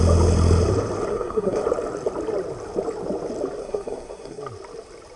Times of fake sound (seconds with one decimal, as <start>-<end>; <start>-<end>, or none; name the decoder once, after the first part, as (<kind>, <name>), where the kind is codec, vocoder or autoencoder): 1.1-1.6 (codec, SNAC); 3.6-4.4